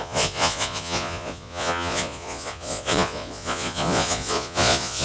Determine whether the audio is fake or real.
fake